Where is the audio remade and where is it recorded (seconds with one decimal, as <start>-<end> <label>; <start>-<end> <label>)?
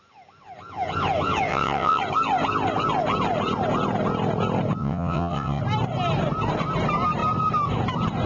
0.0-1.5 recorded; 1.5-2.0 remade; 2.0-4.8 recorded; 4.8-5.6 remade; 5.6-8.3 recorded